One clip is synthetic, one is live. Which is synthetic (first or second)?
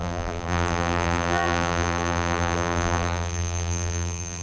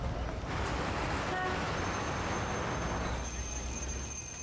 first